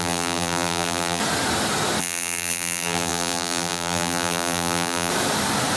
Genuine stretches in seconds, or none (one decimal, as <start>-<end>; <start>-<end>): 1.2-2.0; 5.1-5.8